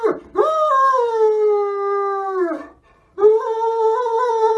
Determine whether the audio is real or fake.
real